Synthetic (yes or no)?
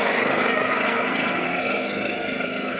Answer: yes